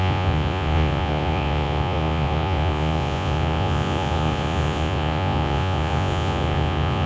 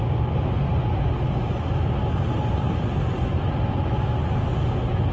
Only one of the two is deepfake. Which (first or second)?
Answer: first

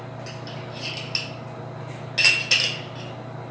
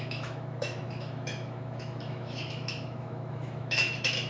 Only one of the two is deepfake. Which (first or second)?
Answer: second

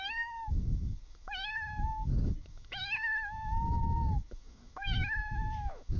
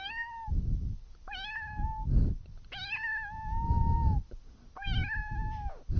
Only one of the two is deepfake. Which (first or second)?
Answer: first